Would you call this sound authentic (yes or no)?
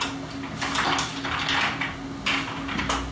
yes